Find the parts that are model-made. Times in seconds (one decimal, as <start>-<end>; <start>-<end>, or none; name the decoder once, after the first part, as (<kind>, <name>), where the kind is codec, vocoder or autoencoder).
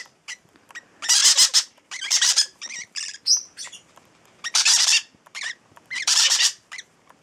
0.0-1.2 (vocoder, BigVGAN v2); 1.8-7.2